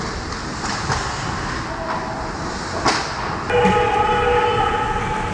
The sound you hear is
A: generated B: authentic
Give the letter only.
B